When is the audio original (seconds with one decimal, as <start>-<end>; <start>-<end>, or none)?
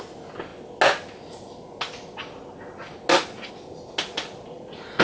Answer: 0.0-5.0